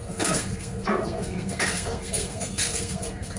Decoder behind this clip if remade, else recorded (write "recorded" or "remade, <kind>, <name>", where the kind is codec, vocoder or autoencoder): remade, codec, SNAC